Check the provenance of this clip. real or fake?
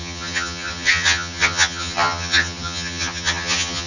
fake